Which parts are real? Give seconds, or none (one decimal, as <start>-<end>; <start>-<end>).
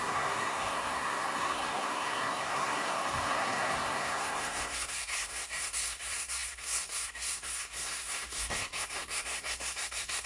none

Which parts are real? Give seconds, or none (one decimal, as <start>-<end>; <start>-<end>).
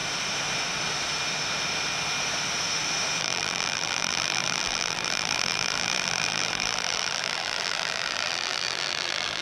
0.0-3.2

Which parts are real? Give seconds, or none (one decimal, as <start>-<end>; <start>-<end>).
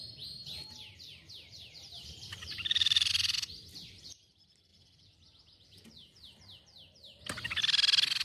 0.0-0.4; 3.1-8.2